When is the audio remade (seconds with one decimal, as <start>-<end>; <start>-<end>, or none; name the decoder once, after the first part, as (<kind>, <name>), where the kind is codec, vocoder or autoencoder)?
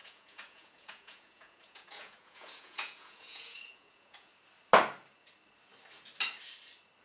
0.0-4.3 (vocoder, Vocos)